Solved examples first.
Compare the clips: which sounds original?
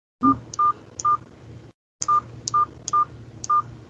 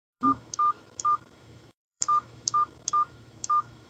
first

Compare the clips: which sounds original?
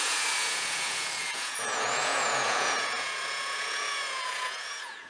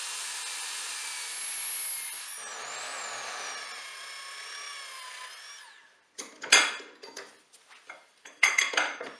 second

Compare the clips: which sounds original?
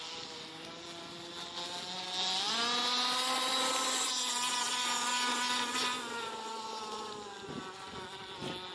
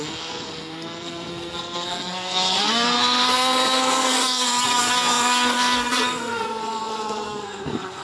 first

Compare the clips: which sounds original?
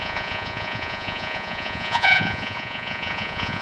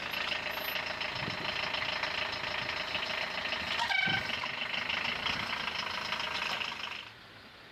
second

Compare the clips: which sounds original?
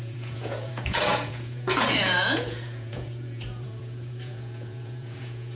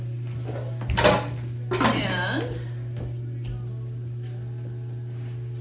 second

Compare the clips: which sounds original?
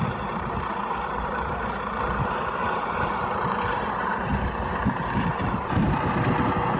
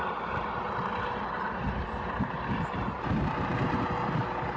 second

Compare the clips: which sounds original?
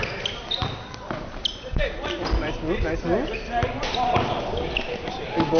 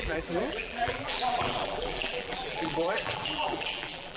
first